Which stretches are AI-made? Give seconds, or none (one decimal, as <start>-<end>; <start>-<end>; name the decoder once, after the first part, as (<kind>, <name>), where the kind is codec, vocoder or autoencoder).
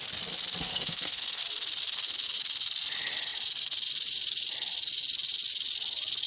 0.7-1.4 (codec, SNAC)